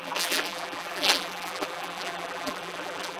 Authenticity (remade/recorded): remade